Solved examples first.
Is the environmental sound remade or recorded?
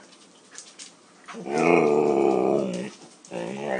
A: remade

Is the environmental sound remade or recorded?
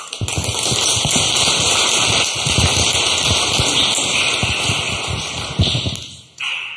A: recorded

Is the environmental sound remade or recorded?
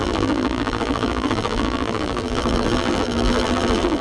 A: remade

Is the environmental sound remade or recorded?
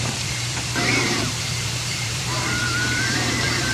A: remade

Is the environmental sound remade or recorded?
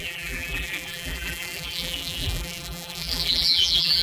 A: remade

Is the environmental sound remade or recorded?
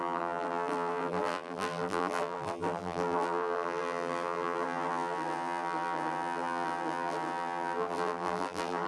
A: remade